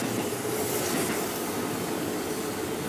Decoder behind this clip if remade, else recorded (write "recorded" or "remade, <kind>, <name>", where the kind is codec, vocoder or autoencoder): recorded